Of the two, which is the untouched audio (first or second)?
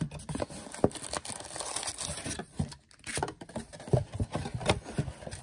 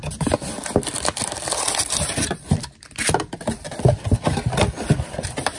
first